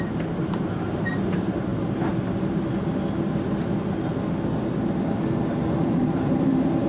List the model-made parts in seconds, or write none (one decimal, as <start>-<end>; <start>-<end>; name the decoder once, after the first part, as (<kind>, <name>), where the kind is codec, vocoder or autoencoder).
0.0-1.7 (vocoder, BigVGAN v2); 5.8-6.9